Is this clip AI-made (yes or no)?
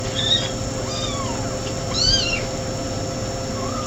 no